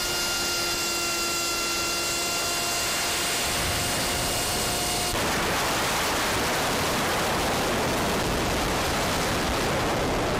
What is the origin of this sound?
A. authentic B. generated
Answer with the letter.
A